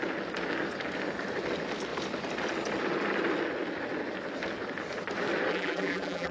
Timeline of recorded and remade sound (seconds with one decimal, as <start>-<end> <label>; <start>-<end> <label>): 0.0-5.5 recorded; 5.5-6.3 remade